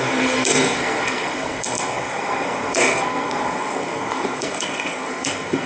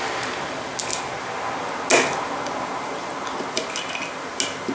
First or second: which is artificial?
first